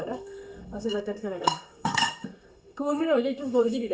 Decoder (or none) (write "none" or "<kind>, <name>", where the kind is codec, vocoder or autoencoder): codec, SNAC